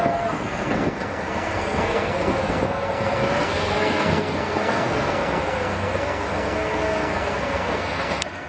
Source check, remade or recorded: remade